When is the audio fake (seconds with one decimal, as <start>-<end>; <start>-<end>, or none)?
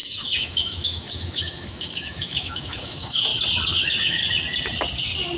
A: 0.0-3.3; 3.8-4.2